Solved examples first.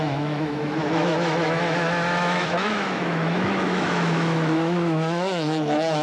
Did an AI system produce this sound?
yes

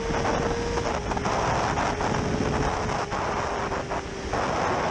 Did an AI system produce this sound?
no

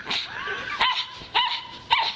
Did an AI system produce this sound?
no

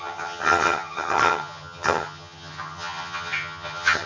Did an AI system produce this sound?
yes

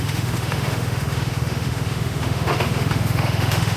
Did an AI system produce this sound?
yes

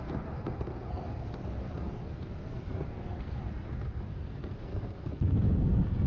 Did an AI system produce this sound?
yes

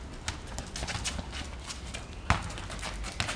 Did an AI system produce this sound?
no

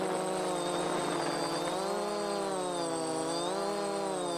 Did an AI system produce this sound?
no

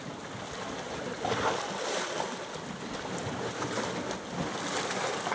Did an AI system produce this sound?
no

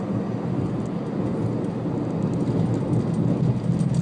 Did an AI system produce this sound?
no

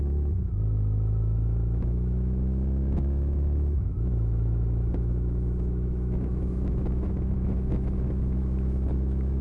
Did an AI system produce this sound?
yes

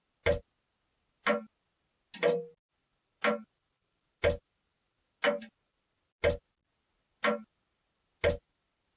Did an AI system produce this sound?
no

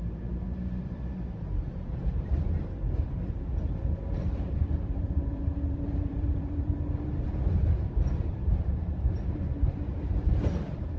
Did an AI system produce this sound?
yes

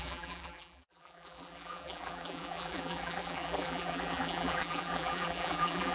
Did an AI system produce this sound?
yes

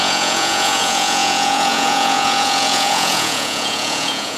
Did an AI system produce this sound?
yes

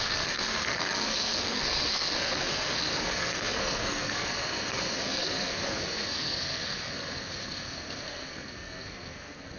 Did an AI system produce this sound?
yes